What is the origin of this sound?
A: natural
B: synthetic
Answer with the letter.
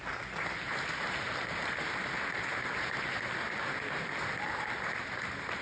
A